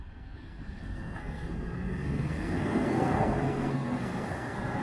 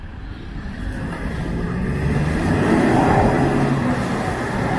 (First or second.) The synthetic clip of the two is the first